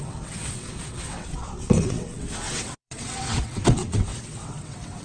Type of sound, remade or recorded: remade